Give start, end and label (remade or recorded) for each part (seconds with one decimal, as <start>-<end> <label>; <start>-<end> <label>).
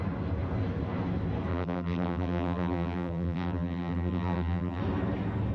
0.0-1.5 recorded; 1.5-4.8 remade; 4.8-5.5 recorded